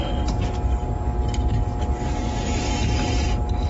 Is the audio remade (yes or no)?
no